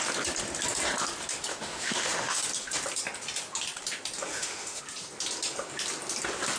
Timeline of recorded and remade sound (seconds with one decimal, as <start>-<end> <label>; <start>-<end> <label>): 0.0-1.5 recorded; 1.5-2.4 remade; 2.4-4.3 recorded; 4.3-4.8 remade; 4.8-6.6 recorded